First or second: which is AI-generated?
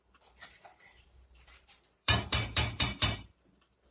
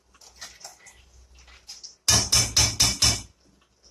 first